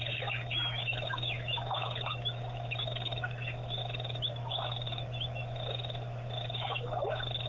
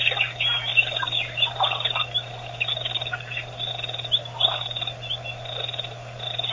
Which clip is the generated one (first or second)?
first